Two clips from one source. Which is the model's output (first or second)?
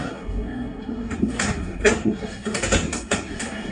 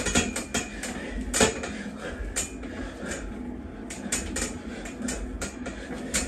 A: first